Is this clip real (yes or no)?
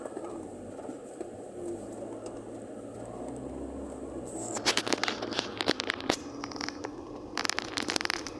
yes